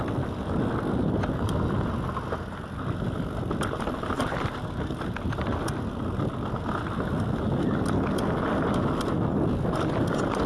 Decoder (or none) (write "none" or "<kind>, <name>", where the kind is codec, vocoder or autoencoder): none